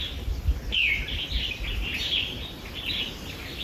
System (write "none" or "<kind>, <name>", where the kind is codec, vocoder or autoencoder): none